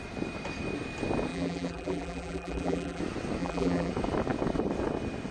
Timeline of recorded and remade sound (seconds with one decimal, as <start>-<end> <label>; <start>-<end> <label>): 0.0-1.3 recorded; 1.3-3.0 remade; 3.0-3.4 recorded; 3.4-3.9 remade; 3.9-5.3 recorded